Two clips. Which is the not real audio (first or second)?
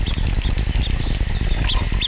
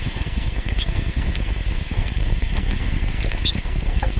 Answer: second